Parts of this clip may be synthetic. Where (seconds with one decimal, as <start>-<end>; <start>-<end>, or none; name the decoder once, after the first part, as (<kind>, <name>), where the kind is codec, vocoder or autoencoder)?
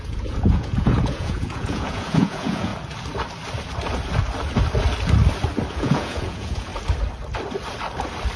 0.0-2.7 (vocoder, Vocos); 5.7-6.7